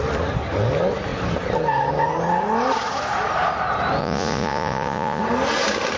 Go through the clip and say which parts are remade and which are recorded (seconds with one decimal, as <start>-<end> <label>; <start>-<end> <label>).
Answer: 0.0-4.0 recorded; 4.0-5.2 remade; 5.2-6.0 recorded